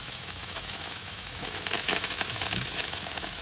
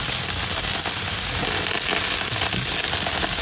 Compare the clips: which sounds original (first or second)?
second